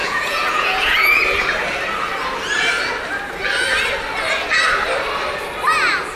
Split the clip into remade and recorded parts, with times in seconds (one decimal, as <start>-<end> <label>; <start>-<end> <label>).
0.0-1.2 remade; 1.2-6.1 recorded